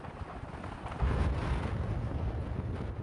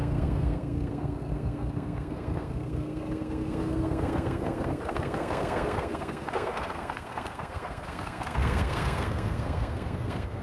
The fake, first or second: second